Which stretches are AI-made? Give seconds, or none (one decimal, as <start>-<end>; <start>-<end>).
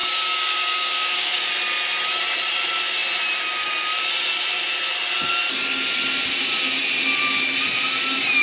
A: 0.0-1.5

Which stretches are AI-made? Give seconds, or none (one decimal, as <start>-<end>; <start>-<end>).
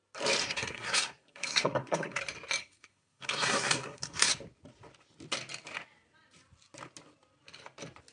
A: 0.4-2.2; 2.6-4.3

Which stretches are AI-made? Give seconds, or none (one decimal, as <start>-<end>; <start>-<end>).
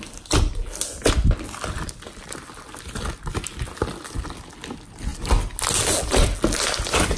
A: none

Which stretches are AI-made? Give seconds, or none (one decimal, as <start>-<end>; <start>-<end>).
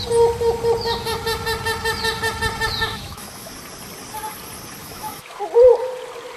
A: 2.9-3.5; 4.8-5.4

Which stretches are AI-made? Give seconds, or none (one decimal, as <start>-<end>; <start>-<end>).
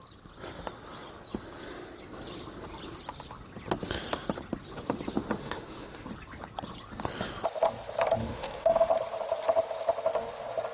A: 5.4-6.1; 8.2-8.9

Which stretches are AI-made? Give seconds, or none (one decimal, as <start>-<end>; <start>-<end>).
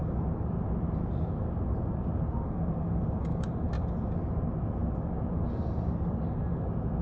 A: none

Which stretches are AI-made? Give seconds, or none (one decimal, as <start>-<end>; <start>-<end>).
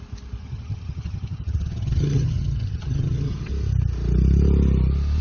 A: 0.4-3.5